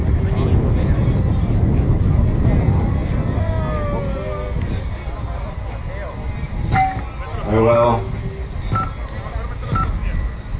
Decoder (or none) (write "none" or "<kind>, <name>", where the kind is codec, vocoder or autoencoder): none